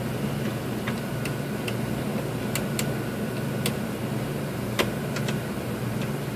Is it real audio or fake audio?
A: real